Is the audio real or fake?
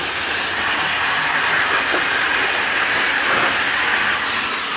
real